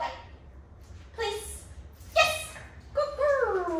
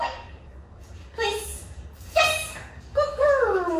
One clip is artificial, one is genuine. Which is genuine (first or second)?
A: first